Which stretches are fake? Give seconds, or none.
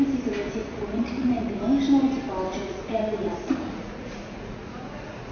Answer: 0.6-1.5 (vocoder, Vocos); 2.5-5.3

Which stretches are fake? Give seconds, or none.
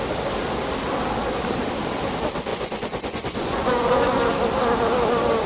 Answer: 2.5-4.2 (vocoder, Vocos)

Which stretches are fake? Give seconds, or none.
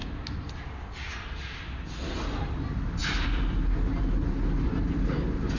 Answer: none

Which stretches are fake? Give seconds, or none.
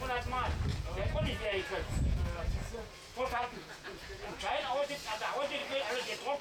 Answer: 0.7-2.5 (vocoder, Vocos); 3.1-4.9